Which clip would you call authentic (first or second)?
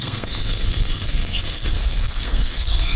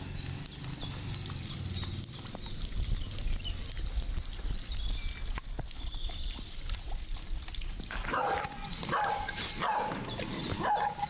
second